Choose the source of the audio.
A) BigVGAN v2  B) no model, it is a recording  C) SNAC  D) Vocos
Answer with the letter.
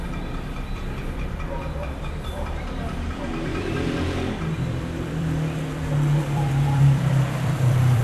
A